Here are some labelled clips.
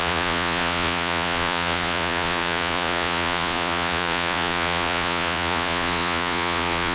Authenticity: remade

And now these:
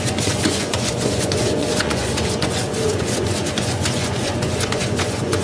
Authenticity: remade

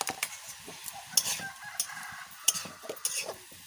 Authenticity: recorded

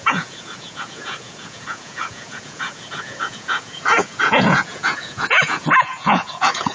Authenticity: remade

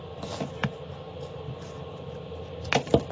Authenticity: recorded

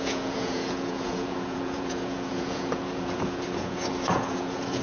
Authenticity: remade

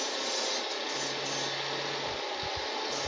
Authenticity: recorded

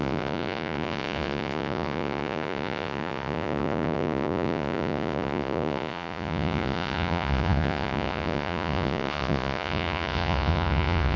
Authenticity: remade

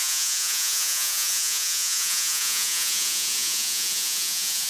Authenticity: remade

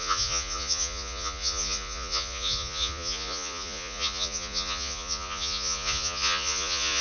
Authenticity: remade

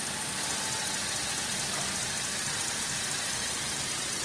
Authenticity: recorded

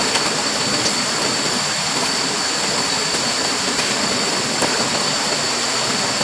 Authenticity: recorded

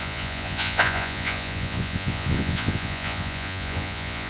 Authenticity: remade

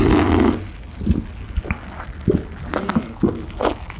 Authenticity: recorded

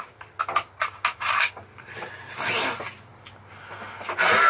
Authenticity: recorded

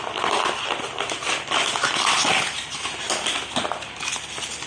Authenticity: recorded